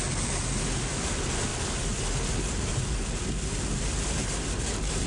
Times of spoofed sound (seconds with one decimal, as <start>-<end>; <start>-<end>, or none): none